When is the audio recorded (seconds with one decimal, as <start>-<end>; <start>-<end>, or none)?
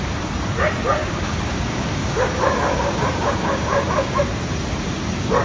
0.0-1.0; 4.2-5.4